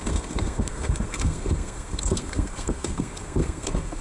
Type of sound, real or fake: fake